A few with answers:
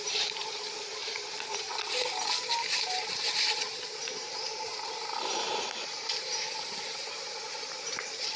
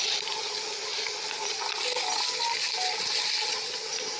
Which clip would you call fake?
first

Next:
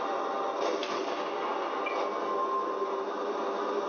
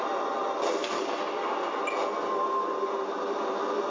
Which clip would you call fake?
second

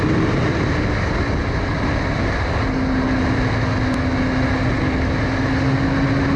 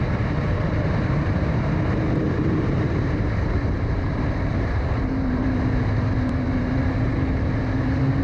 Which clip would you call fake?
second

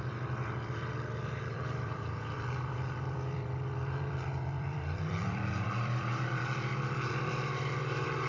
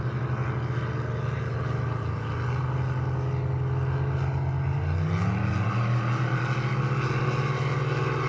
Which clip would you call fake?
first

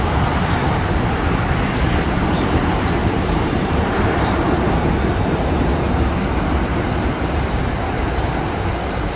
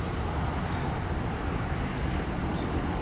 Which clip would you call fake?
first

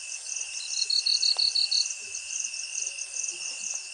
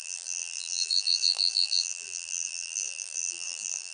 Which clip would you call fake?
second